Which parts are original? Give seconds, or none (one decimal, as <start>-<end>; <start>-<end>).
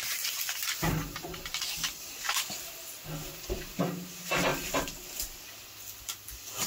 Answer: 0.0-0.6; 2.7-3.2; 3.8-6.7